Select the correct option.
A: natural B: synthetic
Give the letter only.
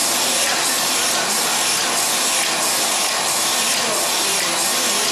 A